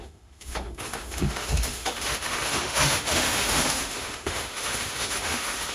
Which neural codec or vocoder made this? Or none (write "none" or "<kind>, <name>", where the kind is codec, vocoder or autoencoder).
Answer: autoencoder, DAC-VAE